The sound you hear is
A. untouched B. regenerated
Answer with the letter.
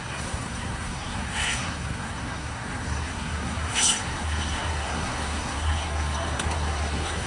B